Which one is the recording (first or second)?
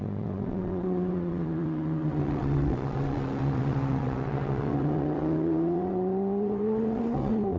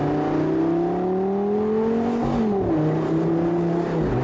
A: second